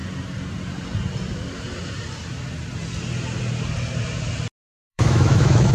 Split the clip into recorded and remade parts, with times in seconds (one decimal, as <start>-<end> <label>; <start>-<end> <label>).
0.0-4.9 recorded; 4.9-5.7 remade